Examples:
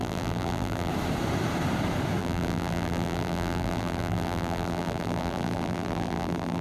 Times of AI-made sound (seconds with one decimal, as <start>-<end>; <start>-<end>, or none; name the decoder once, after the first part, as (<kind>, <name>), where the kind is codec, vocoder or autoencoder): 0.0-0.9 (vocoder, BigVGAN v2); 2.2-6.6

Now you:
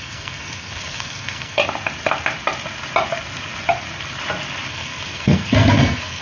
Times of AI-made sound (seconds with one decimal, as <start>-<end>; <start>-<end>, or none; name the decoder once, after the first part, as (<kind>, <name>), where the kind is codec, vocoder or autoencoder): 0.0-1.6 (codec, SNAC); 4.7-6.2

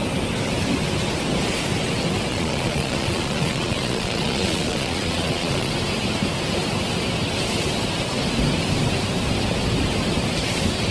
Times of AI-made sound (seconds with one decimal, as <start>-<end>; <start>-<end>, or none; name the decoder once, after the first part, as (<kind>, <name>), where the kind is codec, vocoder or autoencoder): 2.3-5.7 (vocoder, Vocos)

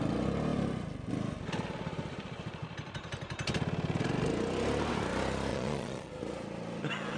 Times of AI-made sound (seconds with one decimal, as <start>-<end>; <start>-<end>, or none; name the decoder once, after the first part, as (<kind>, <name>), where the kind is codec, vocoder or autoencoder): 5.5-6.1 (vocoder, Vocos)